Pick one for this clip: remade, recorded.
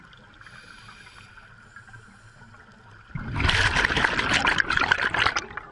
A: recorded